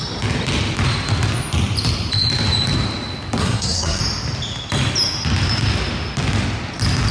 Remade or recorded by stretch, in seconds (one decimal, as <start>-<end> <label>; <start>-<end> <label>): 0.0-3.4 recorded; 3.4-4.0 remade; 4.0-7.1 recorded